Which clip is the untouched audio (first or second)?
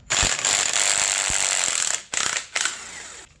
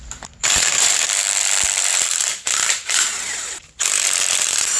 first